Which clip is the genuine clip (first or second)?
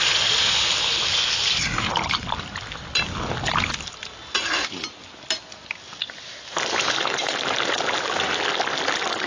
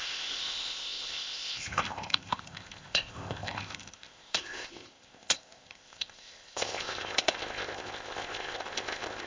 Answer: first